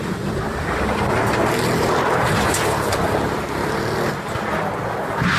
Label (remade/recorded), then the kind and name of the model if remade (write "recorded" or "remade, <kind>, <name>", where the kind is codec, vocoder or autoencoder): recorded